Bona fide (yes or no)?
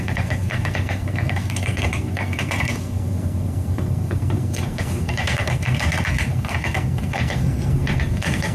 no